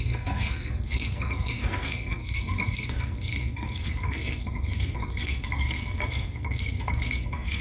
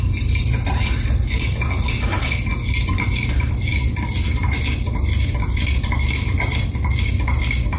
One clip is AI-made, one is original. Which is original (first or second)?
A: second